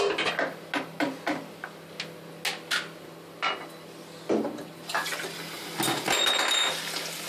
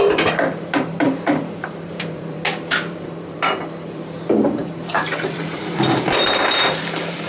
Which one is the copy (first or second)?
second